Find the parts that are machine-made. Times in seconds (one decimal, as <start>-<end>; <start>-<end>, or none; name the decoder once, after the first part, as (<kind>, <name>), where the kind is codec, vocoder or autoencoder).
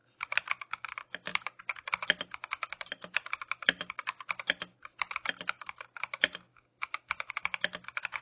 6.5-7.3 (autoencoder, DAC-VAE)